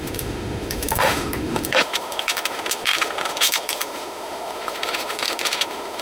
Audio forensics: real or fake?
fake